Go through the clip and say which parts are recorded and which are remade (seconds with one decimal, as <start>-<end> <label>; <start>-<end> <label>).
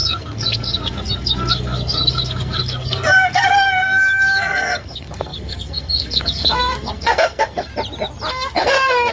0.0-7.7 remade; 7.7-8.3 recorded; 8.3-9.1 remade